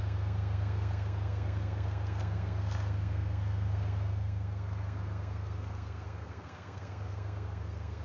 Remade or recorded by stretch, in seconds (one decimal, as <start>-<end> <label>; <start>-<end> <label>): 0.0-8.0 remade

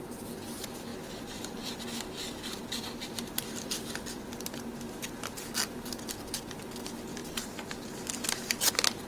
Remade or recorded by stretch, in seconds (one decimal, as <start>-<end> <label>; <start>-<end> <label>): 0.0-0.9 recorded; 0.9-1.7 remade; 1.7-2.6 recorded; 2.6-6.0 remade; 6.0-9.1 recorded

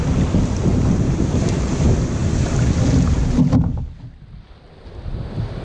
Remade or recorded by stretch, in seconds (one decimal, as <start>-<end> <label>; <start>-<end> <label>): 0.0-0.7 recorded; 0.7-1.7 remade; 1.7-5.6 recorded

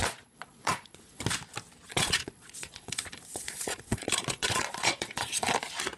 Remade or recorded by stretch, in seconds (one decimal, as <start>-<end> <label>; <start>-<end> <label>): 0.0-1.2 remade; 1.2-1.9 recorded; 1.9-5.5 remade; 5.5-6.0 recorded

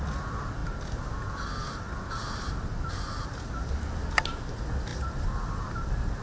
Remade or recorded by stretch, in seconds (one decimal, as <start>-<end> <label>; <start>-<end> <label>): 0.0-6.2 recorded

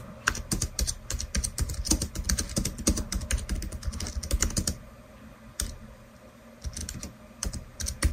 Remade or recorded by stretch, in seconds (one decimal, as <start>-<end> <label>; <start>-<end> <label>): 0.0-8.1 recorded